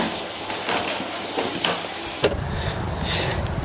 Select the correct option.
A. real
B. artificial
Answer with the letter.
A